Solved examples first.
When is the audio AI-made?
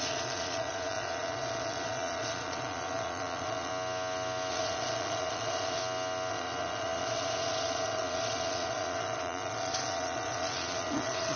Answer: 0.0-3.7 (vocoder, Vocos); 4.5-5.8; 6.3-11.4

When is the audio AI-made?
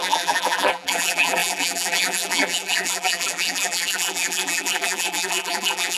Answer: 0.0-6.0 (vocoder, BigVGAN v2)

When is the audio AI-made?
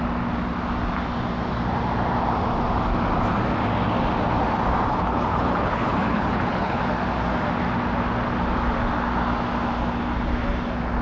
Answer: 4.9-6.8 (codec, HILCodec)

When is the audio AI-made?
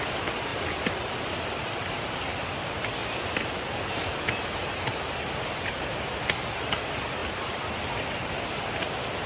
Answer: 0.5-1.6 (vocoder, BigVGAN v2)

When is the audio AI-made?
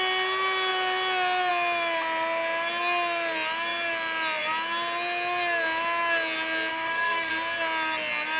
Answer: 6.7-7.3 (codec, SNAC)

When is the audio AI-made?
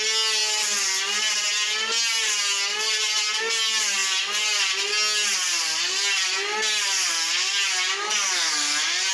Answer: none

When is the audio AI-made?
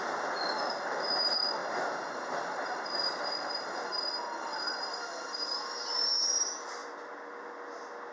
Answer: none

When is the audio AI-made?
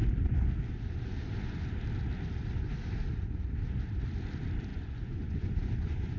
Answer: 4.7-6.2 (vocoder, Vocos)